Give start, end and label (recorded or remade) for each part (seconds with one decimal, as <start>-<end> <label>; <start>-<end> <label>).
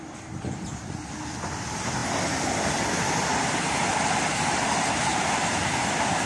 0.0-6.3 recorded